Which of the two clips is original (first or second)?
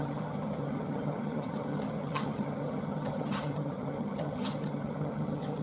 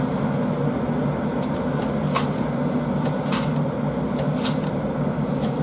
second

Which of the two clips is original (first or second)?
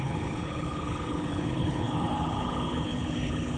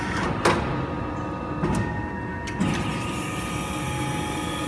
second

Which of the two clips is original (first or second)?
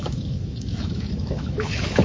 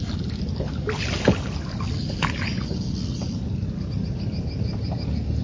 second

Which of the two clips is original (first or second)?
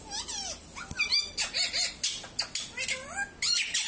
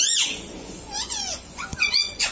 first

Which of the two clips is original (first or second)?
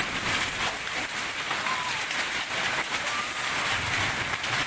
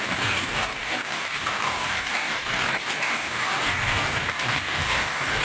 first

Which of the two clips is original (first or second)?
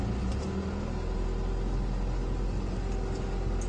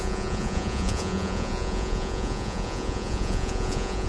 first